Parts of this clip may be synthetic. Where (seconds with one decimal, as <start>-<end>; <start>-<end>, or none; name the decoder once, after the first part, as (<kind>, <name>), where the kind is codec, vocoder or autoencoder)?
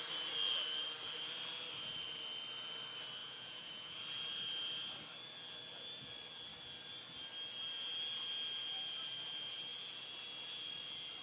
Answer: 3.2-4.0 (vocoder, Vocos)